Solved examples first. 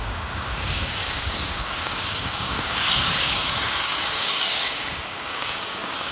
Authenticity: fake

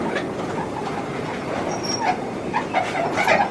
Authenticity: real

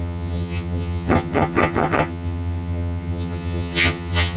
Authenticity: fake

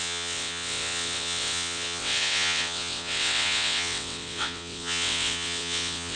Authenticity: fake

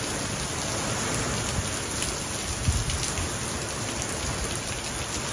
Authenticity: real